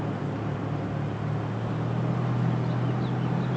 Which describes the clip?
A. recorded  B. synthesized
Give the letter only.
A